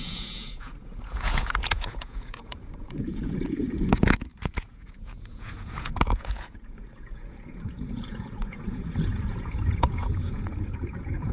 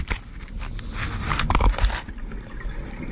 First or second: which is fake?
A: first